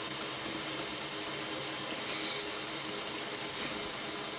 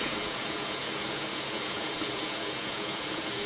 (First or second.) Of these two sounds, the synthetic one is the second